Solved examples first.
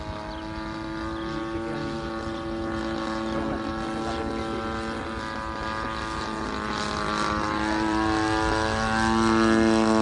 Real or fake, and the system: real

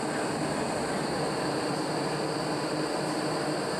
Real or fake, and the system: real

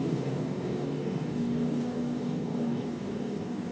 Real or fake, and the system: fake, codec, DAC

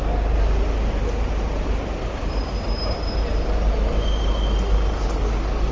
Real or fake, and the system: real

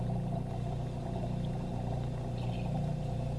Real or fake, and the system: real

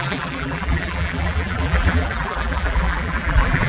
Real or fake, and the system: fake, vocoder, BigVGAN v2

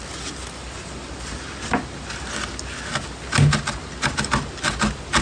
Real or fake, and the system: real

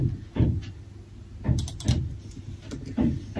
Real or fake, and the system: real